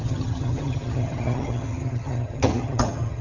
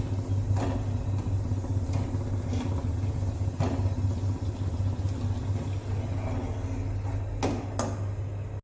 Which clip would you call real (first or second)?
second